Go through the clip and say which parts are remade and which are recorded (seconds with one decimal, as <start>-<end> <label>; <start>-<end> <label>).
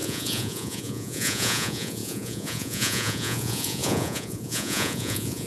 0.0-5.5 remade